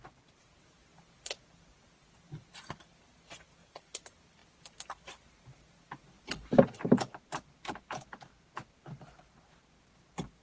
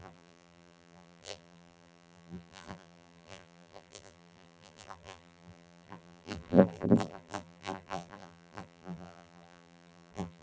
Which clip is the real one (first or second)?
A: first